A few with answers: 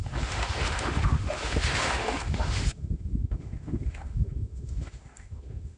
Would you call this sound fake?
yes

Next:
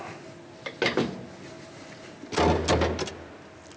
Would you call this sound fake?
no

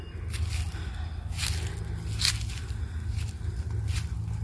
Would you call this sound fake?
no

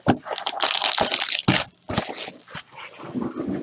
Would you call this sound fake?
no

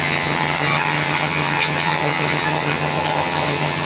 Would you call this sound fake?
yes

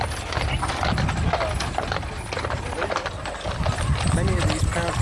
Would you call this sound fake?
no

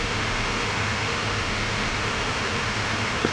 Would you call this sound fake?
yes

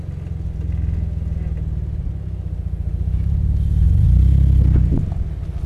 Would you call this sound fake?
no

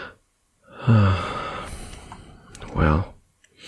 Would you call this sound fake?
no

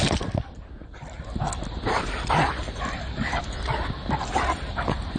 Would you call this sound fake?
no